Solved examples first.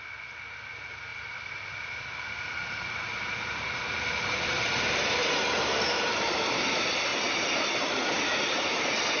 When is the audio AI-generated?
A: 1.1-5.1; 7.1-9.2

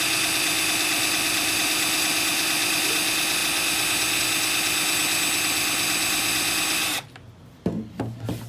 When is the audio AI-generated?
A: none